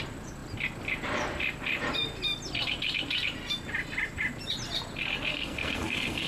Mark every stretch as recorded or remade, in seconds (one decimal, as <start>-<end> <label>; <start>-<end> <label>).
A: 0.0-5.3 recorded; 5.3-6.3 remade